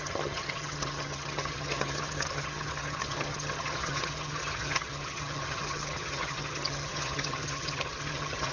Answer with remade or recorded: remade